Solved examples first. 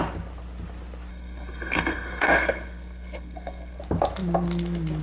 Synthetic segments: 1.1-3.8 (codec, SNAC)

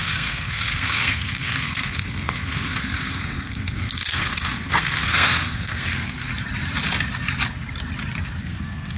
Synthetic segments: 0.0-6.3 (codec, SNAC); 8.4-9.0

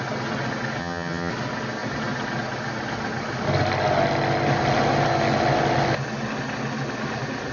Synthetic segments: 0.8-1.3 (vocoder, HiFi-GAN)